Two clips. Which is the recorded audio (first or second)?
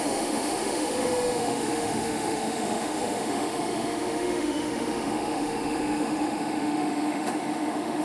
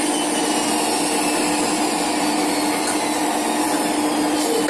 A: second